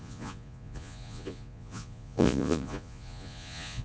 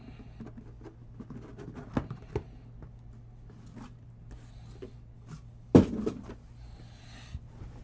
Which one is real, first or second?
second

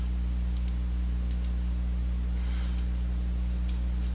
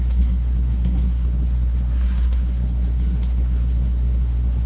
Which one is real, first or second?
first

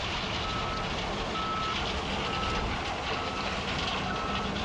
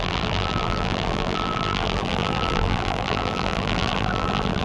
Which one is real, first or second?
first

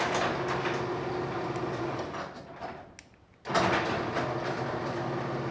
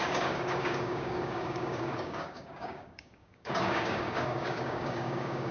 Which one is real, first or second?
first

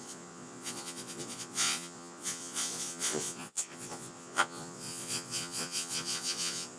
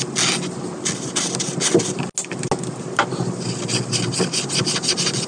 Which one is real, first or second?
second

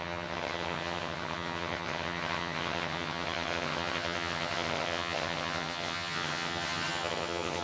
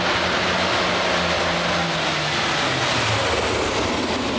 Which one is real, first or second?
second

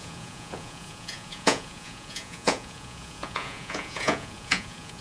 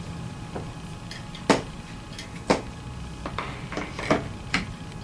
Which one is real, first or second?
second